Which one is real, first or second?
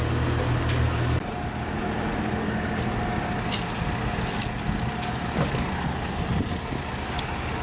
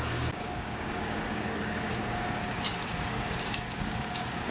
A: first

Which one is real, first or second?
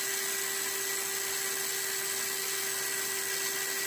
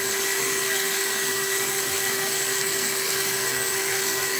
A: first